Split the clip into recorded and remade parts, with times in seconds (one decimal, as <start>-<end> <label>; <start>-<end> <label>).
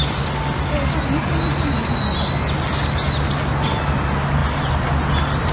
0.0-5.5 recorded